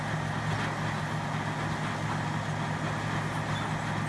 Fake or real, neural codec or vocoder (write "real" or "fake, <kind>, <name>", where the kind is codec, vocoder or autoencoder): real